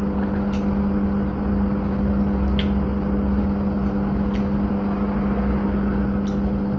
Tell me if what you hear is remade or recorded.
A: recorded